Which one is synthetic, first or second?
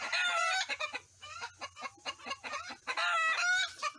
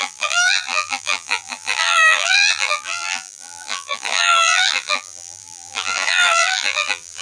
second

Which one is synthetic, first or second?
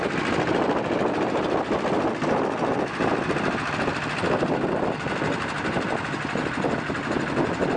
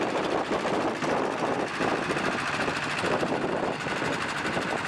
second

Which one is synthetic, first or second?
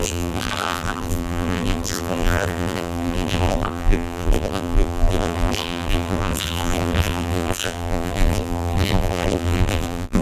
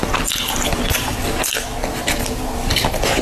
first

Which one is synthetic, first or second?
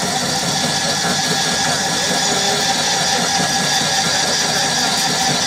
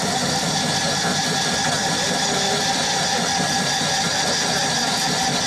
second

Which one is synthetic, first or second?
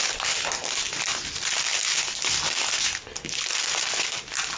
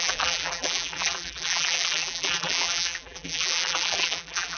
second